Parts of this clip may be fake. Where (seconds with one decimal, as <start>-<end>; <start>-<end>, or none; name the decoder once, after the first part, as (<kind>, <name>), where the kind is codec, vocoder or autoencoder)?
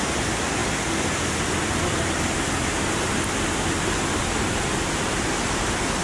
none